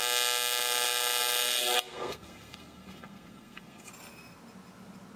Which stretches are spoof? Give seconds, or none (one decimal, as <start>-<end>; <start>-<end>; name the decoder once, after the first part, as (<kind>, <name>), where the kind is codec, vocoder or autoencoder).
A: 1.6-3.9 (codec, SNAC)